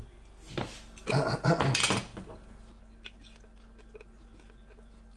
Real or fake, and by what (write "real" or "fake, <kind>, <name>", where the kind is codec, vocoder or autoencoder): real